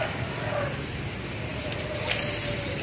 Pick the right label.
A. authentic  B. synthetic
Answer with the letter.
A